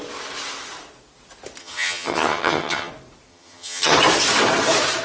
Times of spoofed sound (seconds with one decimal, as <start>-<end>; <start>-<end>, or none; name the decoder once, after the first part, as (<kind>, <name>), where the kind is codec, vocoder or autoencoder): 1.6-2.9 (vocoder, HiFi-GAN); 3.3-3.9